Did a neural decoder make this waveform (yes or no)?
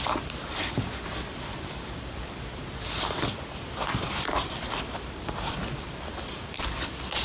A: no